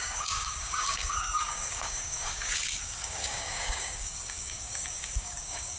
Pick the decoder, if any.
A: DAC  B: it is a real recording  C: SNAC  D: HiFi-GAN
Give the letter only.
A